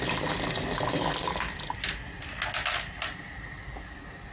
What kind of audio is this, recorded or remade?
recorded